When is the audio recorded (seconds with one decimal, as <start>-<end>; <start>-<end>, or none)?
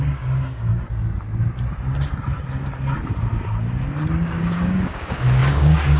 0.7-4.3